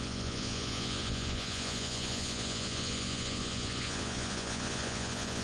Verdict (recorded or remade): remade